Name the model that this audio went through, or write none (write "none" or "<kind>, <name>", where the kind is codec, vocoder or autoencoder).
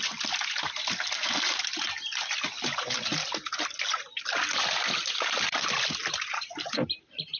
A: none